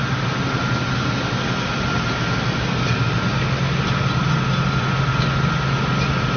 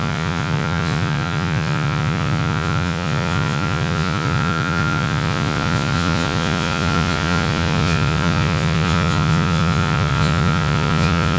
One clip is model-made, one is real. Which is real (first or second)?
first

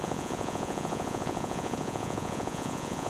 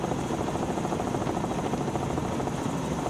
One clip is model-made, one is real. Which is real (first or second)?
second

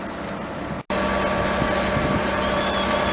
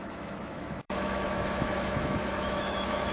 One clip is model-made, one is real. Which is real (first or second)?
first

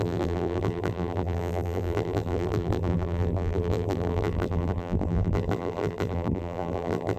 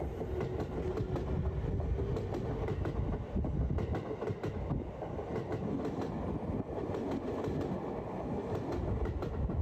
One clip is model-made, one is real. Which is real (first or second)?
second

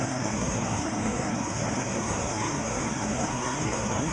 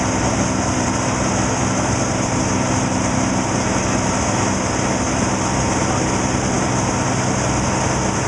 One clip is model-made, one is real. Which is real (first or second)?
second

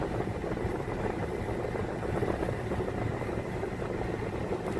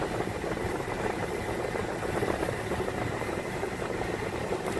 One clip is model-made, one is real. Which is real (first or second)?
first